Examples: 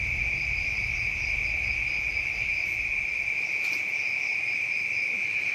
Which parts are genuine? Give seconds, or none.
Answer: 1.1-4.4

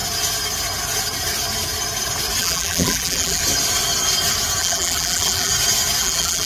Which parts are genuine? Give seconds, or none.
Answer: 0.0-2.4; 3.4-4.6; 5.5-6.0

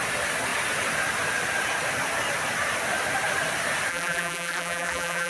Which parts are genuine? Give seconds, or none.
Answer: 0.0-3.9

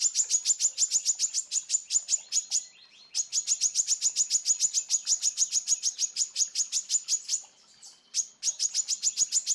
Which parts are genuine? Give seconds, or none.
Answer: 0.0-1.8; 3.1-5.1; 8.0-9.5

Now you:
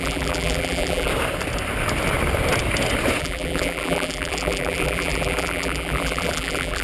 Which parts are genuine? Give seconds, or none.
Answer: 1.1-3.2